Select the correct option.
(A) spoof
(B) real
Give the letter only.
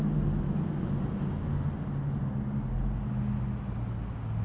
B